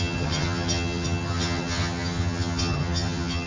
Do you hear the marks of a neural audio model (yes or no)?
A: yes